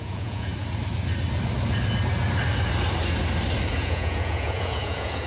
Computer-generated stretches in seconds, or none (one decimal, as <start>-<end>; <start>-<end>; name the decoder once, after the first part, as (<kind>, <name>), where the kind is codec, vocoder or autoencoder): 0.0-0.5 (vocoder, Vocos); 3.7-5.3